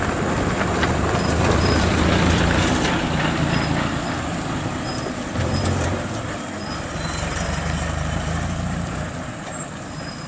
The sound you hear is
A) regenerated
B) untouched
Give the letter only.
A